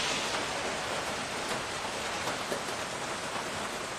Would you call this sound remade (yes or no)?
no